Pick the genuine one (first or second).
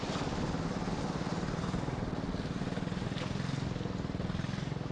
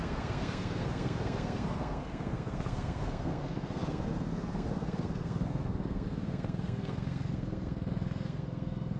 first